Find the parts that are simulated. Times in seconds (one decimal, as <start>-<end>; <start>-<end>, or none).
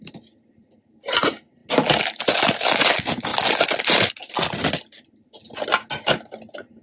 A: none